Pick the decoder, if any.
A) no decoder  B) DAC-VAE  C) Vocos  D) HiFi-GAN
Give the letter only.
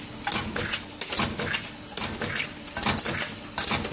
A